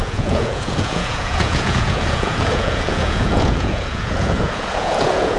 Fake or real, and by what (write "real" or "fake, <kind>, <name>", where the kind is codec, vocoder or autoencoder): fake, vocoder, Vocos